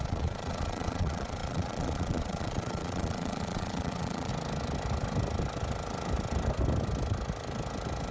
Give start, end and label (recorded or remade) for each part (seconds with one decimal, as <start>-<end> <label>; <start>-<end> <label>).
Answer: 0.0-4.3 remade; 4.3-8.1 recorded